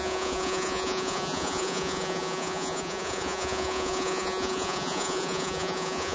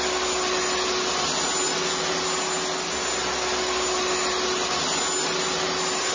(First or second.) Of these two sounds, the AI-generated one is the first